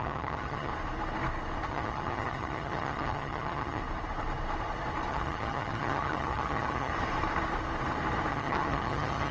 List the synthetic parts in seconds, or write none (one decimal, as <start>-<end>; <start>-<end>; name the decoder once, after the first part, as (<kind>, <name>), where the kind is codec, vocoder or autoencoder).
0.0-0.7 (vocoder, HiFi-GAN); 1.7-3.8; 5.1-6.9; 8.3-9.3